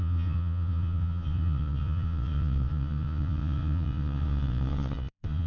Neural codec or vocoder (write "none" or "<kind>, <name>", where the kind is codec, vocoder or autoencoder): vocoder, Vocos